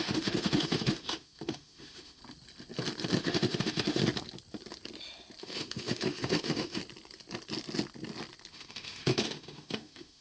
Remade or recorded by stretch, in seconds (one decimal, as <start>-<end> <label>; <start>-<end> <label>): 0.0-2.2 remade; 2.2-3.2 recorded; 3.2-4.0 remade; 4.0-5.4 recorded; 5.4-6.8 remade; 6.8-8.5 recorded; 8.5-10.2 remade